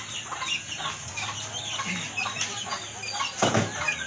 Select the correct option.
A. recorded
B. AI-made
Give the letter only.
A